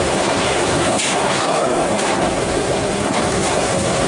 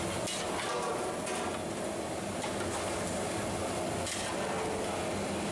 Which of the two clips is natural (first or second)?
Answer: second